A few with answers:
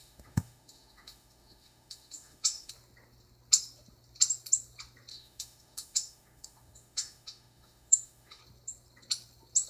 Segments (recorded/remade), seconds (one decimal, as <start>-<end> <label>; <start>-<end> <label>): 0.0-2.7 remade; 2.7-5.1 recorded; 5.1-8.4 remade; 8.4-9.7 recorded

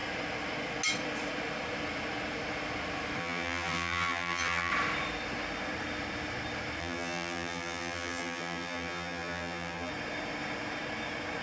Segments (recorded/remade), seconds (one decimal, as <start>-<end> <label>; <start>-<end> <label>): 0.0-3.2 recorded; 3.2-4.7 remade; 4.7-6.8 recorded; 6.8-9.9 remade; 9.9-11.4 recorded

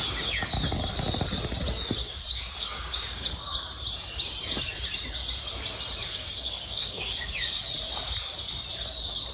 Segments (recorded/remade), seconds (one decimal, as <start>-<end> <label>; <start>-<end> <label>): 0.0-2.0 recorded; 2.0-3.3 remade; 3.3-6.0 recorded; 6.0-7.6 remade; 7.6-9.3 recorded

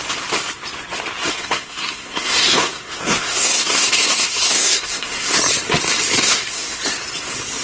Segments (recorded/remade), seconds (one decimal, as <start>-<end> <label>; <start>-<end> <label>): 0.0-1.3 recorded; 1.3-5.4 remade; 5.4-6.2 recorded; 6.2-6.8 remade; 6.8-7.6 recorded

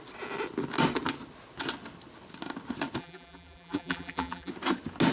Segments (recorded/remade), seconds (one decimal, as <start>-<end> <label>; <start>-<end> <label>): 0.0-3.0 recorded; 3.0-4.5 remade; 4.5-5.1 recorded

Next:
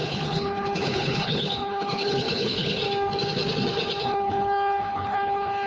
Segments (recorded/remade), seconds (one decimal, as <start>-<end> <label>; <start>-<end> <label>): 0.0-2.8 remade; 2.8-4.0 recorded; 4.0-5.7 remade